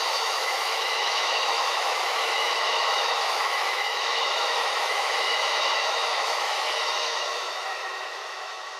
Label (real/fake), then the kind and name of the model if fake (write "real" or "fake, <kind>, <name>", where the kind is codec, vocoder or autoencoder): fake, autoencoder, DAC-VAE